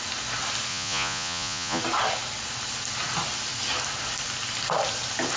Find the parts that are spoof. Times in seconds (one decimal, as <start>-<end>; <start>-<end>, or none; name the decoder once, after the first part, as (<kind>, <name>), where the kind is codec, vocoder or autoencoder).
0.7-1.8 (vocoder, Vocos)